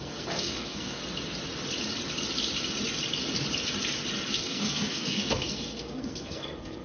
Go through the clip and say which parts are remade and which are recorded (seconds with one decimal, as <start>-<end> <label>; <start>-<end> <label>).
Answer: 0.0-1.0 remade; 1.0-4.3 recorded; 4.3-6.8 remade